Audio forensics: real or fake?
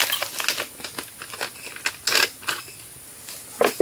real